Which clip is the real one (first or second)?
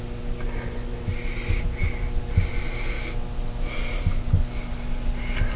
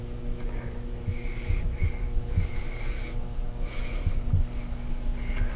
first